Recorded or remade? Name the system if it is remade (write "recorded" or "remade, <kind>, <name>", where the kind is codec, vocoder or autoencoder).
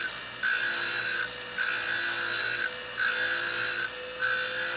recorded